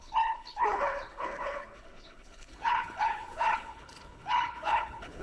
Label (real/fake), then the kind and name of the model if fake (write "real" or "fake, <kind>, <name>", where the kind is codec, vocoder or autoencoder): fake, codec, HILCodec